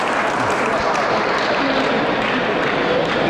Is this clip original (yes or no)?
yes